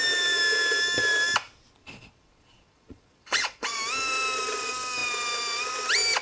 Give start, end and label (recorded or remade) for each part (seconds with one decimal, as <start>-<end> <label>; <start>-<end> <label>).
0.0-1.8 recorded; 1.8-3.8 remade; 3.8-6.2 recorded